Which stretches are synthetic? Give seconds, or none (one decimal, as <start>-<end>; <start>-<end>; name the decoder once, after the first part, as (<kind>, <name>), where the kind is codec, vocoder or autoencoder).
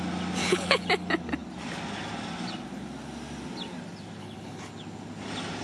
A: 0.4-0.9 (codec, HILCodec); 4.2-4.7